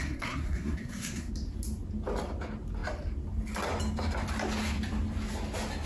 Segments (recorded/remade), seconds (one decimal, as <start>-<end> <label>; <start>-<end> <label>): 0.0-1.3 remade; 1.3-5.9 recorded